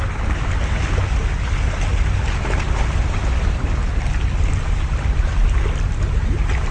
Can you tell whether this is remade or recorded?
recorded